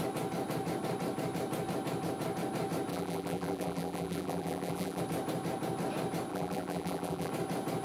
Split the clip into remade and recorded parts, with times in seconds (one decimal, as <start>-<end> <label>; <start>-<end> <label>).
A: 0.0-2.9 recorded; 2.9-5.0 remade; 5.0-6.3 recorded; 6.3-7.3 remade; 7.3-7.8 recorded

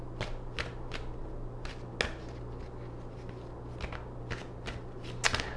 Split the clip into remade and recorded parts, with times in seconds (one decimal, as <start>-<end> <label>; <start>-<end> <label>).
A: 0.0-5.6 recorded

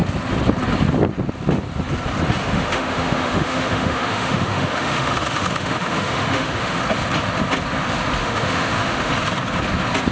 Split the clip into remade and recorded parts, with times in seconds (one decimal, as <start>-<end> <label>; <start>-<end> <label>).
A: 0.0-2.4 recorded; 2.4-6.8 remade; 6.8-8.2 recorded; 8.2-9.1 remade; 9.1-10.1 recorded

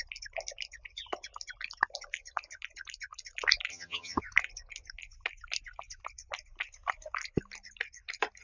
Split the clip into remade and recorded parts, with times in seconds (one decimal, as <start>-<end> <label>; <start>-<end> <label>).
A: 0.0-3.7 recorded; 3.7-4.2 remade; 4.2-8.4 recorded

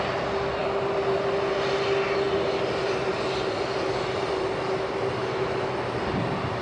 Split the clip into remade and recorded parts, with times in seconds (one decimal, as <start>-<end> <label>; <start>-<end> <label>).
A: 0.0-5.2 recorded; 5.2-5.7 remade; 5.7-6.6 recorded

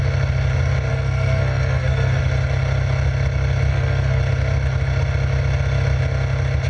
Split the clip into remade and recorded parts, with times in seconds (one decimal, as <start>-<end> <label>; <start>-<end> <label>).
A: 0.0-0.9 recorded; 0.9-2.2 remade; 2.2-3.7 recorded; 3.7-4.2 remade; 4.2-6.7 recorded

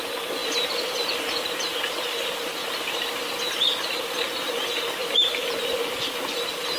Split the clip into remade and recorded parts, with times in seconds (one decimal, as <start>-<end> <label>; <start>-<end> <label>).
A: 0.0-6.8 recorded

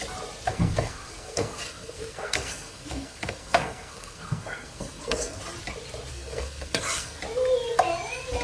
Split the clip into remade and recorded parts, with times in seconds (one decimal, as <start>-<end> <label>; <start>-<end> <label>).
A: 0.0-0.5 recorded; 0.5-5.4 remade; 5.4-6.1 recorded; 6.1-7.2 remade; 7.2-8.4 recorded